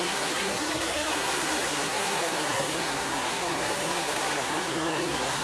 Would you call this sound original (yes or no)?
no